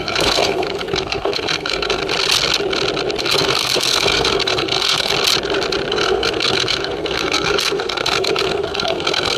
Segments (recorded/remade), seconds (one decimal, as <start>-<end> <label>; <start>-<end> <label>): 0.0-2.0 remade; 2.0-3.2 recorded; 3.2-5.1 remade; 5.1-5.9 recorded; 5.9-9.4 remade